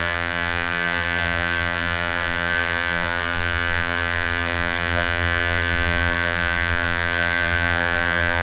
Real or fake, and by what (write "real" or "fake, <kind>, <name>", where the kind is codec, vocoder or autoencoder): fake, vocoder, BigVGAN v2